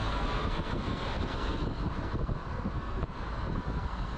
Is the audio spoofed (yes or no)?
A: yes